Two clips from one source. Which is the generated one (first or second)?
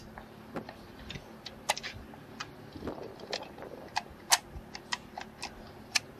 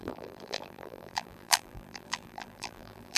second